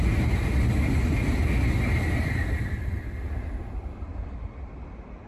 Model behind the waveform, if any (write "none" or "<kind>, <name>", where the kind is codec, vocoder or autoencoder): none